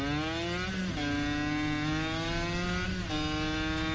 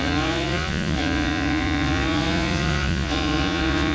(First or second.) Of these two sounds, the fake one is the second